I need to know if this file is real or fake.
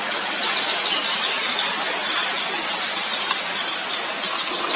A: real